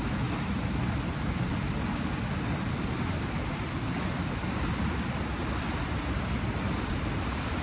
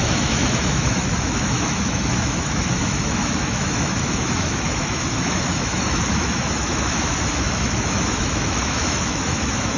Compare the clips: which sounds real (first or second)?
first